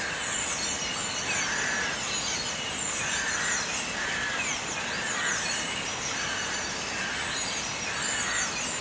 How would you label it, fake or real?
real